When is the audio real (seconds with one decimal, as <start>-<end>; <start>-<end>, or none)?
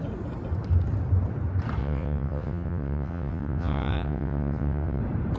0.0-1.8; 5.0-5.4